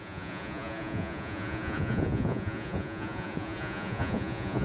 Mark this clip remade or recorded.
remade